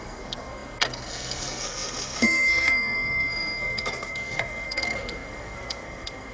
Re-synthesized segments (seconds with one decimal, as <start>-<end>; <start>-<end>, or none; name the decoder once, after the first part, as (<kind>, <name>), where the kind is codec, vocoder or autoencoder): 0.0-6.3 (codec, SNAC)